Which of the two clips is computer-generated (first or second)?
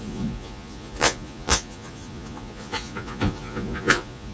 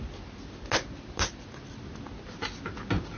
first